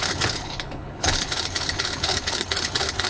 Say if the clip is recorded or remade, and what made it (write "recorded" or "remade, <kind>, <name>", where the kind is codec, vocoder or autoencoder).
remade, codec, HILCodec